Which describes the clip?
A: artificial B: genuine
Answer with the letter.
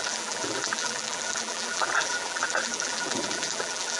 A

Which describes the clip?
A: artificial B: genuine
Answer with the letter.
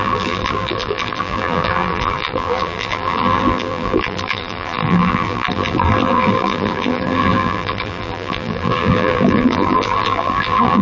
A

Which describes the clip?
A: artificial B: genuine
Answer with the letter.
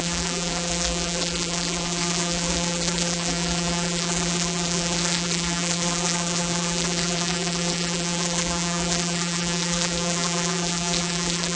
A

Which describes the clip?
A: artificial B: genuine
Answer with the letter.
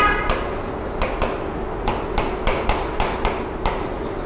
A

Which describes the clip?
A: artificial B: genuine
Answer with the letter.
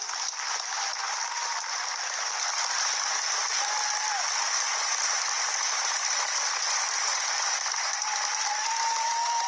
A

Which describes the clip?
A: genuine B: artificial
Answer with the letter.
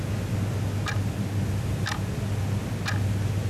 A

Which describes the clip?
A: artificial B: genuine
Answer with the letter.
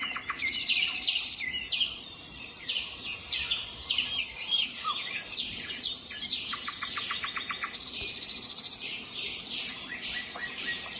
A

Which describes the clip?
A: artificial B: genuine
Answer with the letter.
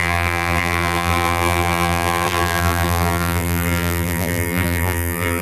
A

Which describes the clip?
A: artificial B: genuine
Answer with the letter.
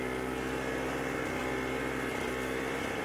A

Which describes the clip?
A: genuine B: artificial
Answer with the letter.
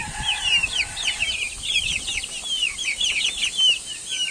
A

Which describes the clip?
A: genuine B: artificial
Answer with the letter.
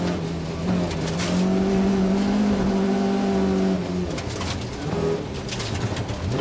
A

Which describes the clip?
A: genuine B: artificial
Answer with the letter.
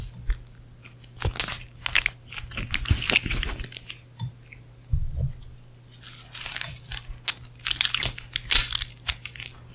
A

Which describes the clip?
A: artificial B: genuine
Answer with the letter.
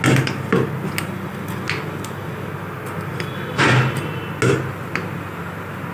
B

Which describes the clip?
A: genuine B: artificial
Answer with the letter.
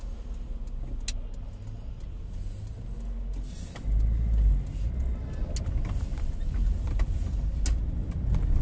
A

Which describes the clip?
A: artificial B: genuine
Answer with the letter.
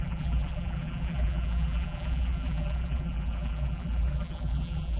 A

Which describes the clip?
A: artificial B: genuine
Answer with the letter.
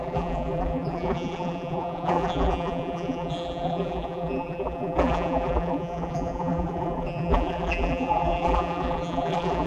A